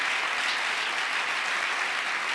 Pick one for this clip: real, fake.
real